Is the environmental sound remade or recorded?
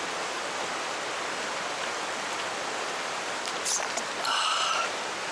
recorded